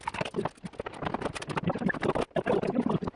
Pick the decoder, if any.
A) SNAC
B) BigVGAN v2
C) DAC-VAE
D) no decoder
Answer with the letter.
D